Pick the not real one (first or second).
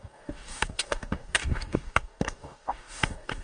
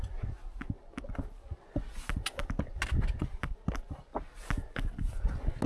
first